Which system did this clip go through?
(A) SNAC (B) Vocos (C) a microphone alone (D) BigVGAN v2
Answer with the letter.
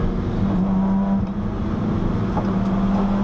C